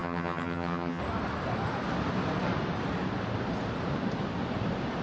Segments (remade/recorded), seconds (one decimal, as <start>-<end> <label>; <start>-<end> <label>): 0.0-1.0 remade; 1.0-5.0 recorded